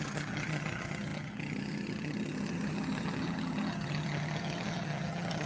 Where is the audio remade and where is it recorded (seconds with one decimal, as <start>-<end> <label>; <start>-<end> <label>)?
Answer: 0.0-5.5 remade